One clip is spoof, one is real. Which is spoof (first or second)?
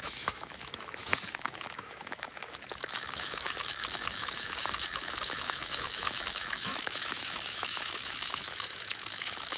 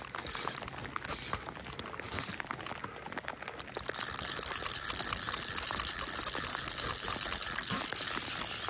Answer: first